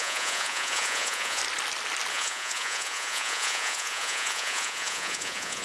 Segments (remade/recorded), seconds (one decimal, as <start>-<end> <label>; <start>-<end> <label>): 0.0-1.4 remade; 1.4-2.1 recorded; 2.1-5.6 remade